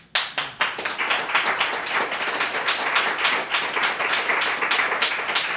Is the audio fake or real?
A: real